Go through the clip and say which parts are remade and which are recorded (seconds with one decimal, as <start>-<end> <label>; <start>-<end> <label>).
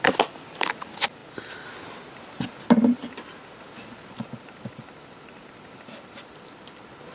0.0-7.1 recorded